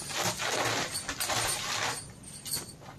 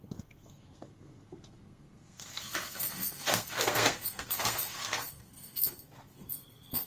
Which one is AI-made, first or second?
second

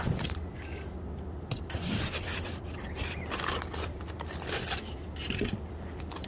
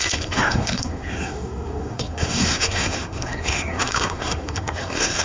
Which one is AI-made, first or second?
second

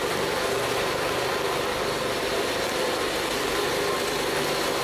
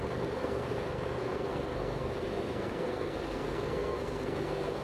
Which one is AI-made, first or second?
second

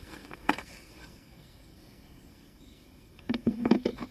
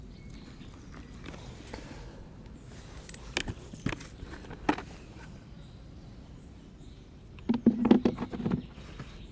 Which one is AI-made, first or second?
first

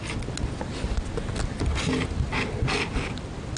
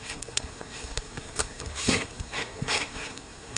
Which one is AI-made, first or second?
second